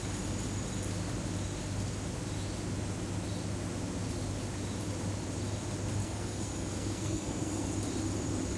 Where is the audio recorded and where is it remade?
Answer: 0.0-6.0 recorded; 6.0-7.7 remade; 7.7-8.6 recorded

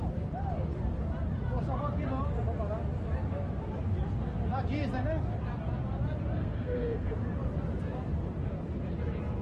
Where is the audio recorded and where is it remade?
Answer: 0.0-6.4 recorded; 6.4-7.1 remade; 7.1-9.4 recorded

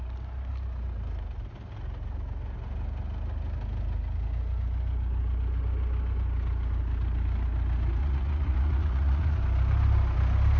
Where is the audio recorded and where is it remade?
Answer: 0.0-8.0 recorded; 8.0-9.4 remade; 9.4-10.6 recorded

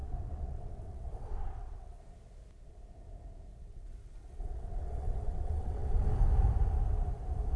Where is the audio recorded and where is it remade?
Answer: 0.0-2.0 remade; 2.0-3.5 recorded; 3.5-6.1 remade; 6.1-7.6 recorded

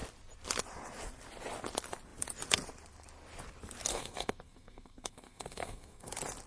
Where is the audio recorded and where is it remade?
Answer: 0.0-3.9 recorded; 3.9-6.1 remade; 6.1-6.5 recorded